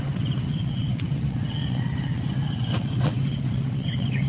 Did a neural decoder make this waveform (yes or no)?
yes